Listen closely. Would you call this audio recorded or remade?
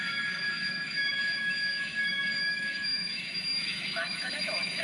remade